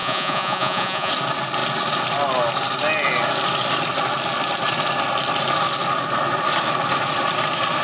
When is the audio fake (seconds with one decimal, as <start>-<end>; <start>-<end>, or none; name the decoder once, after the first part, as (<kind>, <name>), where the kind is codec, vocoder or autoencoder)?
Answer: 0.0-1.1 (vocoder, Vocos)